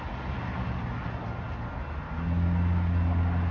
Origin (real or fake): real